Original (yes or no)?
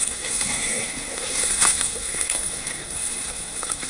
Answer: no